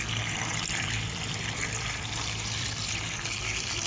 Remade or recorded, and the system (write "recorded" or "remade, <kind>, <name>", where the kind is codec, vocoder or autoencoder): remade, vocoder, BigVGAN v2